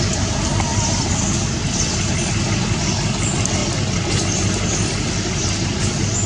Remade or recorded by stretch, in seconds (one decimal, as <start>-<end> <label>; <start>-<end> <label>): 0.0-6.3 recorded